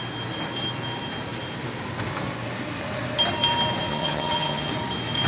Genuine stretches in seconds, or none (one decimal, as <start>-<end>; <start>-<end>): 0.0-3.9; 4.7-5.3